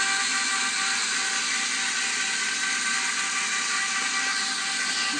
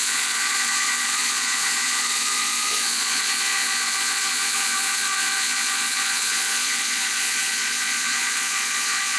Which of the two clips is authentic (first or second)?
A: first